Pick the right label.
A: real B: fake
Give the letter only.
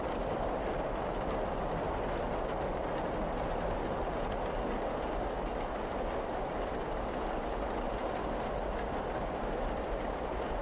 A